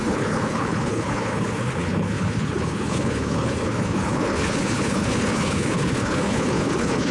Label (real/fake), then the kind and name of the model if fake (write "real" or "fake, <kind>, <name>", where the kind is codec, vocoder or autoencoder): fake, codec, HILCodec